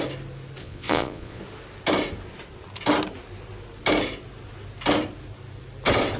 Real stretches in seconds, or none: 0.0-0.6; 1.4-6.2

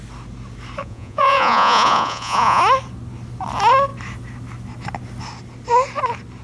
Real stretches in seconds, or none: 0.0-0.8; 2.6-6.4

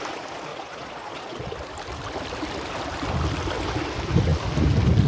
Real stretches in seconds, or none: 0.0-0.5; 1.5-5.1

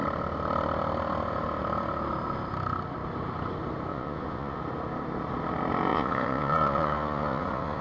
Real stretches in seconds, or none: 0.0-3.9; 4.6-5.9

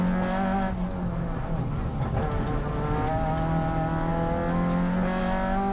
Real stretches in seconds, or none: 0.0-5.7

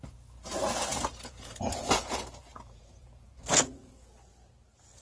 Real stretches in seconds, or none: 0.0-0.9; 3.9-5.0

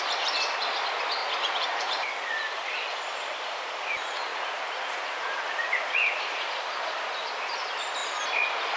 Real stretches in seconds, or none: 0.0-1.2; 2.1-4.3; 6.5-8.8

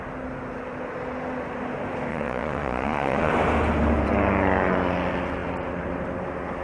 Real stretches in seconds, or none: 0.0-2.1; 3.3-6.6